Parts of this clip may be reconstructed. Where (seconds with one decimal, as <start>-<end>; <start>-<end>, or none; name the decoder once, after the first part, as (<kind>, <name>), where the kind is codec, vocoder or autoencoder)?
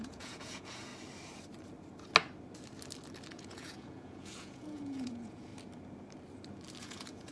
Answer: 0.0-0.9 (vocoder, Vocos); 3.3-5.5; 6.8-7.3